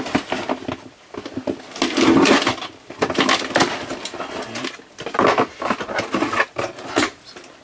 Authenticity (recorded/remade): recorded